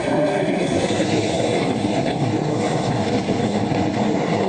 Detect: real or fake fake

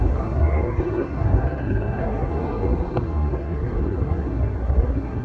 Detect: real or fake fake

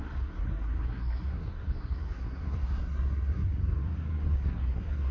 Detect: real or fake fake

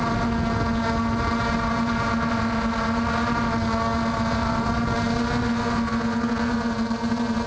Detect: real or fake real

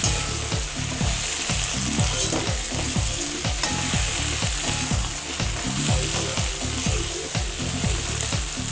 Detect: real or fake real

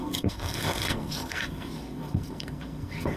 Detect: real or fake fake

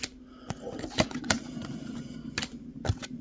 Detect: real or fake real